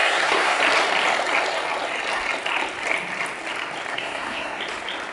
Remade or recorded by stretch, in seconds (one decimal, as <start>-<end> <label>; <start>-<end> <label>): 0.0-0.6 remade; 0.6-3.9 recorded; 3.9-4.6 remade; 4.6-5.1 recorded